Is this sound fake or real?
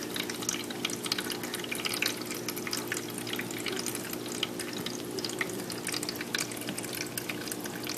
real